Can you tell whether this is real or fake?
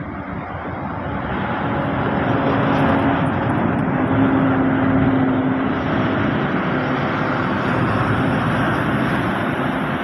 real